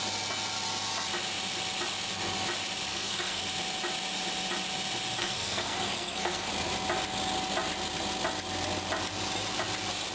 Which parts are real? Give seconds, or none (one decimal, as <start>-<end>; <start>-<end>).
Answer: 0.0-2.9; 3.4-5.2; 6.5-10.1